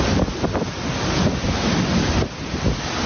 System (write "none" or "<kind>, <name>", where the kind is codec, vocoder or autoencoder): none